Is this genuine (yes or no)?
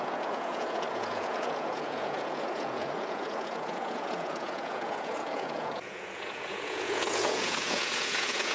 no